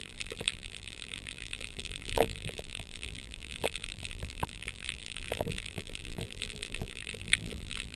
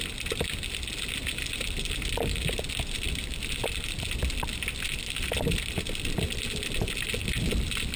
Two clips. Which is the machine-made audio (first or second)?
first